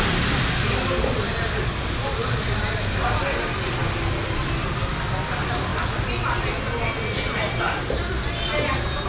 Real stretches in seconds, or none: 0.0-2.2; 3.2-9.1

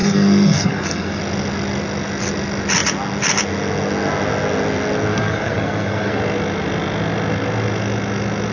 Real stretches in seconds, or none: 1.2-5.1; 6.2-8.5

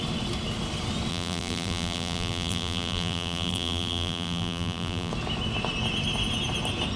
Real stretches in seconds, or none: 0.0-1.1; 5.1-7.0

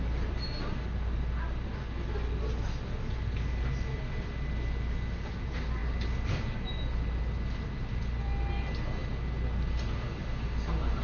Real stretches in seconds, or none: 0.0-11.0

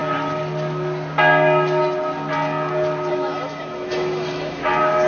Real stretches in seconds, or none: 0.0-3.1; 4.6-5.1